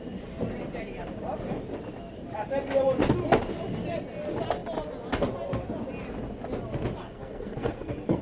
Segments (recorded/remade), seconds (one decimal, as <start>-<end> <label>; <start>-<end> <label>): 0.0-7.0 recorded; 7.0-8.2 remade